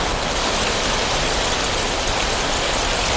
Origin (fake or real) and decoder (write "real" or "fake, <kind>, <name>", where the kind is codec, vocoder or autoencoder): fake, vocoder, BigVGAN v2